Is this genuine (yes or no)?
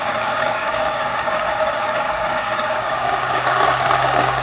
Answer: no